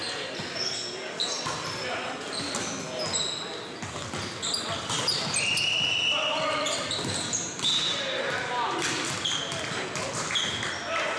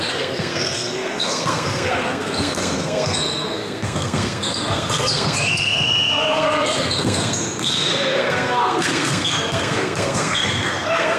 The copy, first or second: second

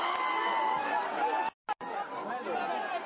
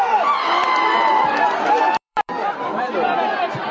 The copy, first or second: second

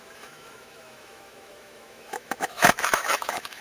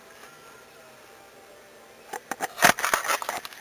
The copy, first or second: first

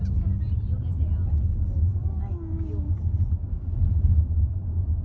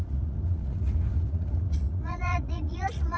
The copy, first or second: second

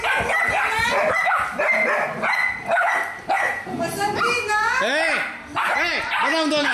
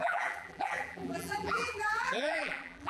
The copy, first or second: second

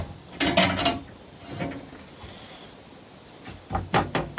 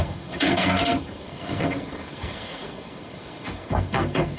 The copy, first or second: second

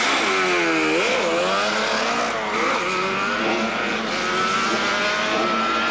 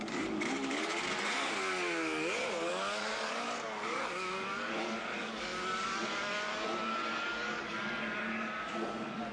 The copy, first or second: second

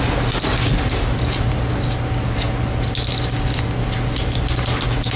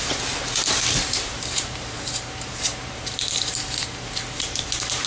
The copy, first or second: second